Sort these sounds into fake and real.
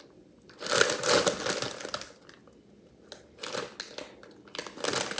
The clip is real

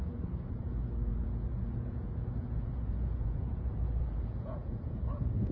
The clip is fake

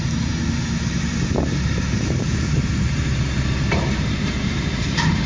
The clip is fake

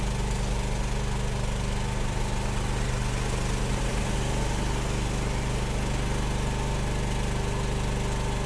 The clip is real